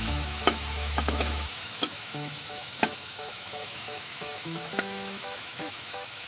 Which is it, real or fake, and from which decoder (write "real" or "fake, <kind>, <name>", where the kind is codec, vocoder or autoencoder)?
fake, autoencoder, DAC-VAE